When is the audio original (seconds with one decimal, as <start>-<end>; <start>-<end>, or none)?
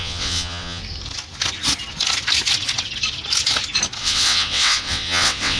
0.8-4.0